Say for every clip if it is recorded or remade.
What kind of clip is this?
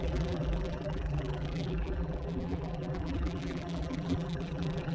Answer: remade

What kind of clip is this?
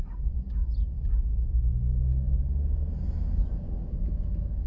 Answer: recorded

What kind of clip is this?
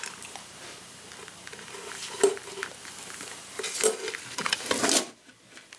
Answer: recorded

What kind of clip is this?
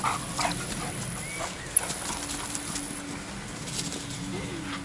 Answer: recorded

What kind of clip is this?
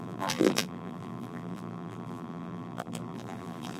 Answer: remade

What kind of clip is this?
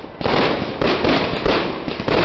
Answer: recorded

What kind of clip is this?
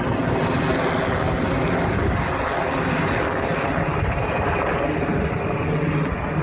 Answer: recorded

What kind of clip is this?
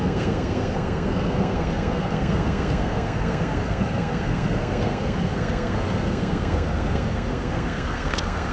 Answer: remade